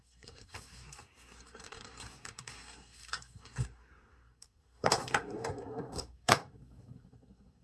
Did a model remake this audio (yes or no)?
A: yes